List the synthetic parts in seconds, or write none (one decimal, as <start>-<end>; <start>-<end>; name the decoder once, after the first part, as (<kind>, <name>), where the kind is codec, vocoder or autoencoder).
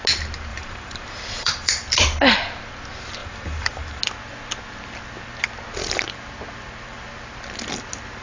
0.5-1.7 (vocoder, BigVGAN v2); 3.2-4.0